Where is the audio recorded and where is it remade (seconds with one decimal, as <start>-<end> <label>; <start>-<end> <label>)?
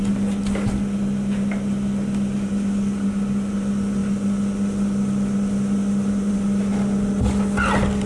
0.0-8.1 recorded